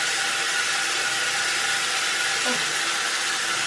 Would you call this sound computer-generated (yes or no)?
no